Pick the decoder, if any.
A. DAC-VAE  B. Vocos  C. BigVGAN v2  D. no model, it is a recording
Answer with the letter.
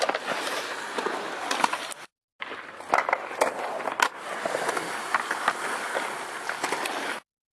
D